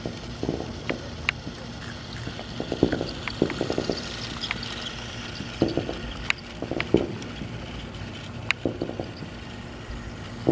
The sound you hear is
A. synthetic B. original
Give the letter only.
B